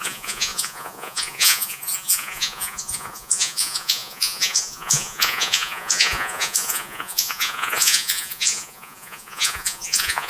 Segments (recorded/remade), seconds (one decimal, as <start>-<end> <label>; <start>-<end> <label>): 0.0-10.3 remade